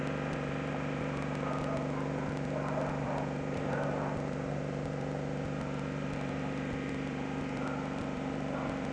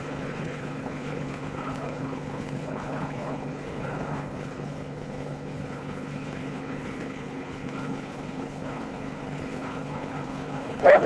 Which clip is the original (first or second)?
first